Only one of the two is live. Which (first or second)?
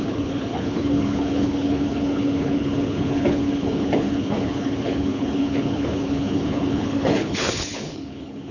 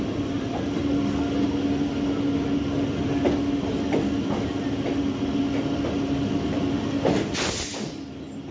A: second